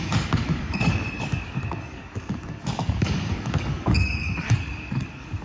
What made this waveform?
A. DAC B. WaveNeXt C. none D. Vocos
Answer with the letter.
A